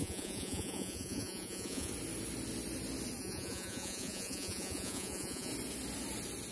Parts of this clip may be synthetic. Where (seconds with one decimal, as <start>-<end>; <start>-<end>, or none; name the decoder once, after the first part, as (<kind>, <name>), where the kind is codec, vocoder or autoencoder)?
0.0-1.9 (vocoder, Vocos); 3.2-5.5